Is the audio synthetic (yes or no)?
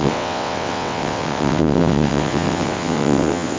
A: yes